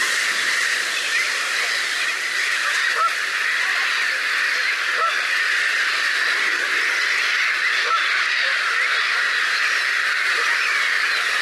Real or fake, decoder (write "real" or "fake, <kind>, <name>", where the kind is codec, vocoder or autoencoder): real